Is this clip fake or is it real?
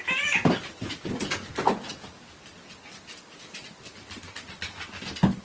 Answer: real